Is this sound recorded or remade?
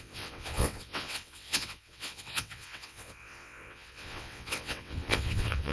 remade